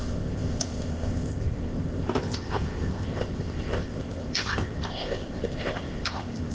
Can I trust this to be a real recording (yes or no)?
no